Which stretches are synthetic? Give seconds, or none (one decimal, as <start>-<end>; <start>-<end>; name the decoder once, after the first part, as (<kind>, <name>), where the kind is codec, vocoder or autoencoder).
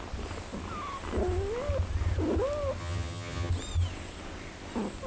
2.8-3.5 (vocoder, HiFi-GAN)